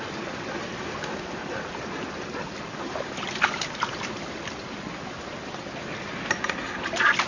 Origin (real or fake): real